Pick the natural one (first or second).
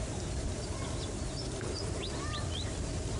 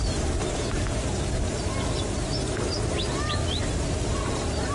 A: second